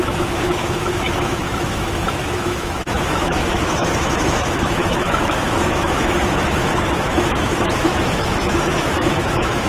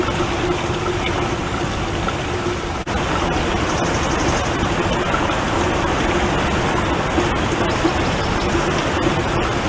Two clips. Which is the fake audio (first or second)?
first